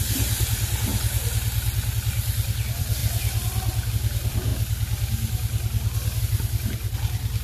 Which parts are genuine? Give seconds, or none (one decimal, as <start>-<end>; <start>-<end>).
3.0-3.9; 4.5-6.2